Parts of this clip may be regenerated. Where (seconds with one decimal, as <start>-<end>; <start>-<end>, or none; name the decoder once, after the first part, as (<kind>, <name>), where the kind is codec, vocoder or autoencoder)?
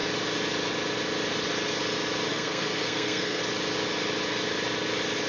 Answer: 2.3-3.4 (codec, SNAC)